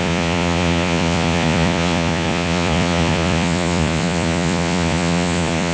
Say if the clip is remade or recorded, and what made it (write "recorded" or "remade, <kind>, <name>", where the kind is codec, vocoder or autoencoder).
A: remade, vocoder, Vocos